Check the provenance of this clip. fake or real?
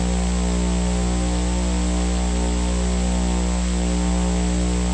real